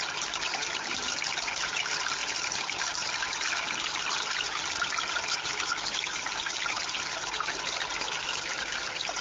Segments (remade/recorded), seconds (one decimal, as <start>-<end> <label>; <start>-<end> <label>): 0.0-2.2 recorded; 2.2-3.5 remade; 3.5-9.2 recorded